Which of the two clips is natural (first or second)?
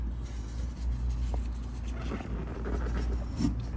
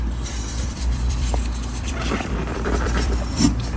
first